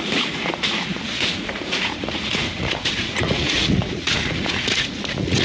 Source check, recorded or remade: remade